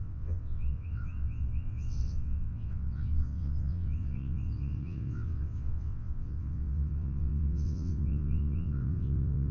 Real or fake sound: fake